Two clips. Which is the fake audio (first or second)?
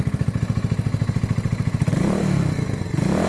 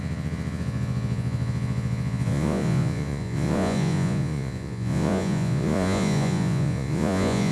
second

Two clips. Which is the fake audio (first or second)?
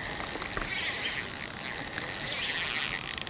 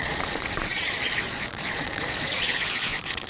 second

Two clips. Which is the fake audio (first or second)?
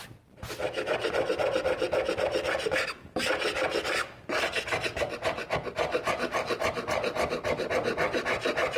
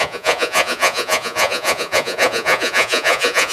second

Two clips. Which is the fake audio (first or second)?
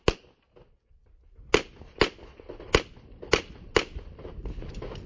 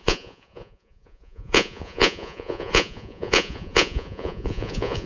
second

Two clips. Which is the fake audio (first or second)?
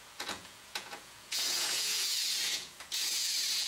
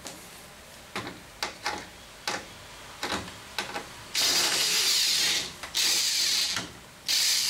first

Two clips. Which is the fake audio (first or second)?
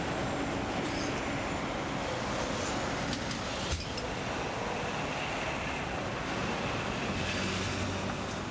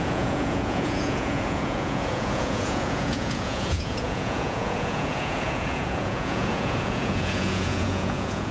second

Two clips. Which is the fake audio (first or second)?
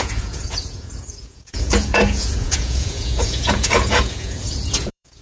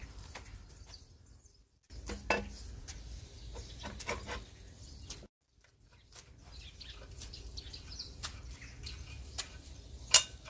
first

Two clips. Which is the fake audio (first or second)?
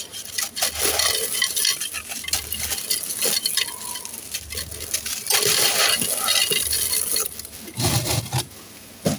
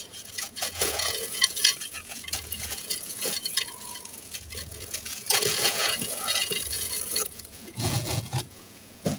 second